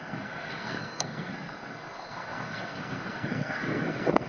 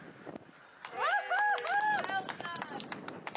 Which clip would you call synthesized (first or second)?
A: first